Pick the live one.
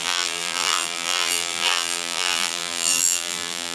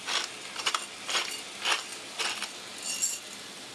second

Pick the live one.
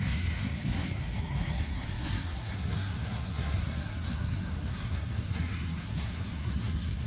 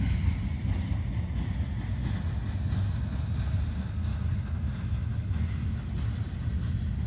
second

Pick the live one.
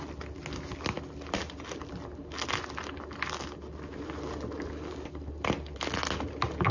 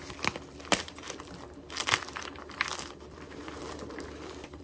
first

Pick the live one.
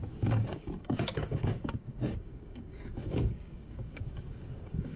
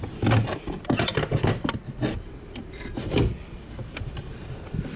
second